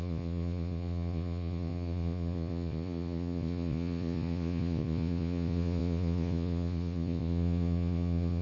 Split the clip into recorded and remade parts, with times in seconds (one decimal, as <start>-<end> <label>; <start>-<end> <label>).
0.0-8.4 remade